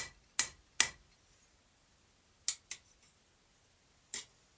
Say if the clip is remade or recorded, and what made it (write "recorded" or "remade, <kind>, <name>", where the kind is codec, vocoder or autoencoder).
recorded